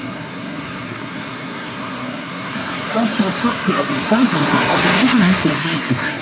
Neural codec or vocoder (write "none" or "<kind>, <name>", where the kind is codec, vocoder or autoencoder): codec, SNAC